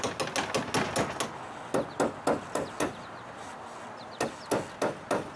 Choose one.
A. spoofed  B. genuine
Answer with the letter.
B